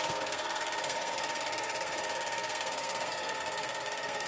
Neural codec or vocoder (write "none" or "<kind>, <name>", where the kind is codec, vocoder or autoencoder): codec, SNAC